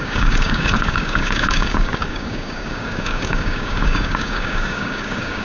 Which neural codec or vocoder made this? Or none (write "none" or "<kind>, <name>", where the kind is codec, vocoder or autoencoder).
codec, DAC